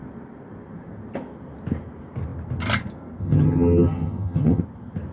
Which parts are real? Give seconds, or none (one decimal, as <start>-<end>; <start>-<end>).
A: 0.0-3.2; 4.6-5.1